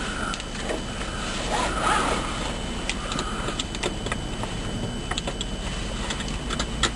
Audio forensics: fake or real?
real